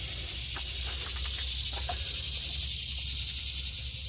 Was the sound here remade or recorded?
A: recorded